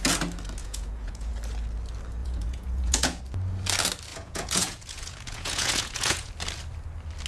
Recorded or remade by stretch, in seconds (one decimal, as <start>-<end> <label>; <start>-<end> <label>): 0.0-0.6 recorded; 0.6-1.3 remade; 1.3-2.2 recorded; 2.2-3.2 remade; 3.2-4.1 recorded; 4.1-6.3 remade; 6.3-7.3 recorded